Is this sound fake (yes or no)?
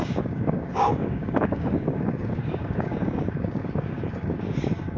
yes